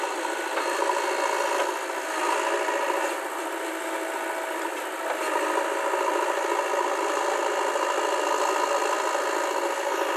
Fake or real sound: real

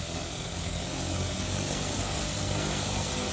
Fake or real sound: fake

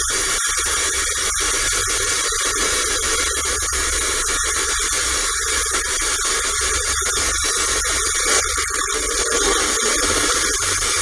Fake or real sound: real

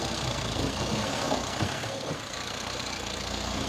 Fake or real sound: fake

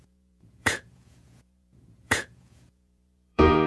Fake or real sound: fake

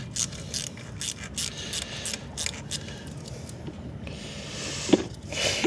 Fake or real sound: real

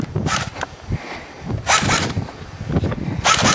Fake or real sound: real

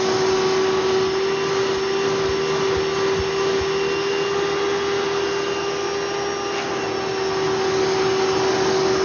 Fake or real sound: real